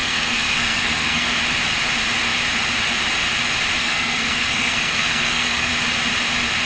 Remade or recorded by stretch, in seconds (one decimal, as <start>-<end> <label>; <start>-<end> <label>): 0.0-1.4 remade; 1.4-3.8 recorded; 3.8-5.7 remade; 5.7-6.7 recorded